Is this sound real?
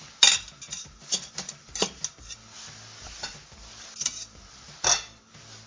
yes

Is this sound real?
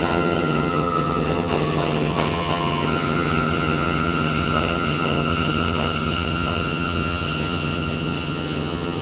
no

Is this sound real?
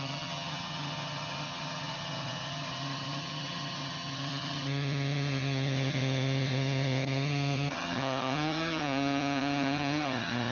no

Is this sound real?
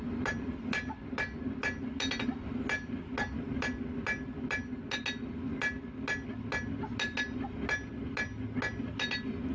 yes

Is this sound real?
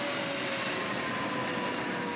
yes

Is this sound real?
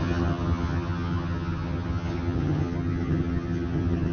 no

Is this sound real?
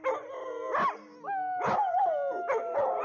yes